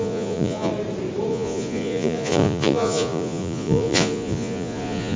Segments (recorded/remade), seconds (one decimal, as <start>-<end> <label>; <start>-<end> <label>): 0.0-0.7 remade; 0.7-1.3 recorded; 1.3-5.2 remade